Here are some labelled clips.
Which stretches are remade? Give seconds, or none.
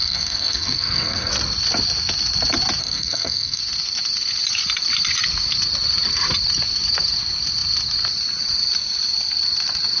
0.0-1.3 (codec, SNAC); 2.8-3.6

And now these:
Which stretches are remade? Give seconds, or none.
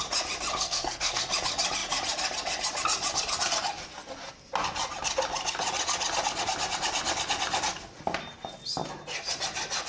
0.6-1.2 (codec, SNAC)